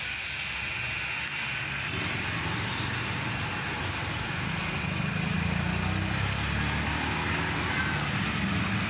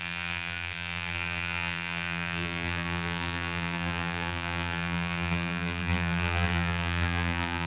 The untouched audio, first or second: first